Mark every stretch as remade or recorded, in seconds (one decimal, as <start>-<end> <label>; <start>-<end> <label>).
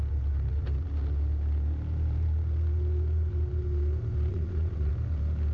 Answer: 0.0-4.3 recorded; 4.3-4.9 remade; 4.9-5.5 recorded